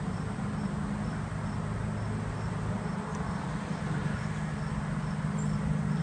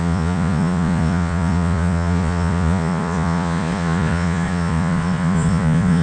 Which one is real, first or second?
first